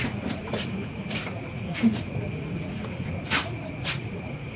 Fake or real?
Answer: fake